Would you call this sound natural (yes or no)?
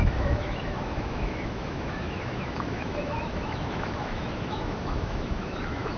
no